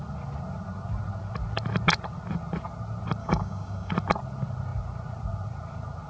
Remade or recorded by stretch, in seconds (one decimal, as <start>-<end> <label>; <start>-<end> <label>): 0.0-3.2 recorded; 3.2-3.9 remade; 3.9-6.1 recorded